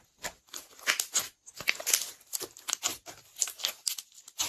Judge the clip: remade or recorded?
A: recorded